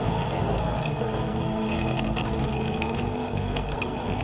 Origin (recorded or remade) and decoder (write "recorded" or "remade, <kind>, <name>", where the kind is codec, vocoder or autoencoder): remade, codec, SNAC